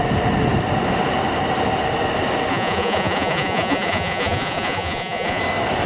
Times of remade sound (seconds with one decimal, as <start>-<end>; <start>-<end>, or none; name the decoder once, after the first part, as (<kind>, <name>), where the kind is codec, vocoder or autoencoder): 2.5-5.4 (vocoder, Vocos)